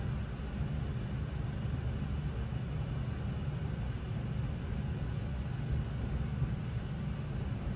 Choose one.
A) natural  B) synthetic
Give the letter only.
A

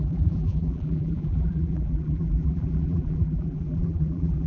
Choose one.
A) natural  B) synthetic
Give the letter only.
B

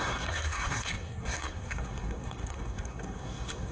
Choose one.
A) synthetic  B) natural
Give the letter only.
A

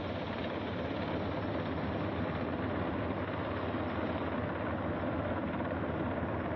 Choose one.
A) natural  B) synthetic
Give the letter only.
A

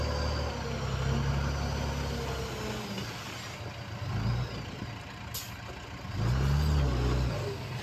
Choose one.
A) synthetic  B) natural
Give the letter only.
B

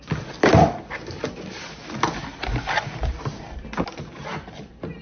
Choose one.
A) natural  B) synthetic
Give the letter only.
A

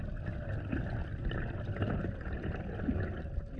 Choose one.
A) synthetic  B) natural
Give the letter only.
B